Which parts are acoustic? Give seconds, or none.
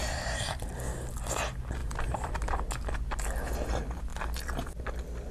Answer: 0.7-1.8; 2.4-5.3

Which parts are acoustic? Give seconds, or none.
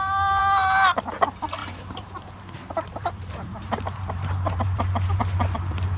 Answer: 0.0-1.6; 5.2-6.0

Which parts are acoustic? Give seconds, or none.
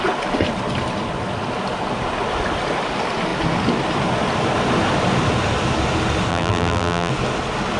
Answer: 0.0-6.3; 7.1-7.8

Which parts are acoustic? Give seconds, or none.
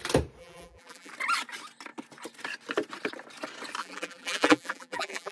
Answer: 0.0-0.4; 1.1-3.8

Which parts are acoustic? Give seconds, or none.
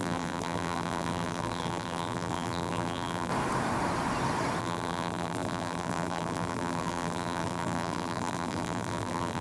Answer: 3.3-4.6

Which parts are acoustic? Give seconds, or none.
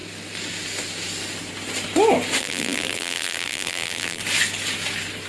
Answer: 0.0-2.4; 4.2-5.3